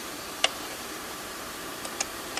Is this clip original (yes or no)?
no